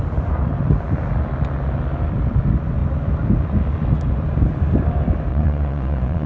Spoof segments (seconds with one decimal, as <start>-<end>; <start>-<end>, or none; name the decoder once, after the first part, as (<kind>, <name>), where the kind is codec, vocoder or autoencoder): 5.3-6.3 (vocoder, Vocos)